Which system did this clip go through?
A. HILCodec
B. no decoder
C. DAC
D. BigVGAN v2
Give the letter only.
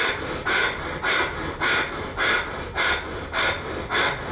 B